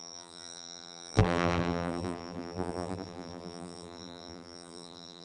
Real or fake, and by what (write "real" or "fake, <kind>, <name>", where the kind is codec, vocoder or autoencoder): fake, vocoder, BigVGAN v2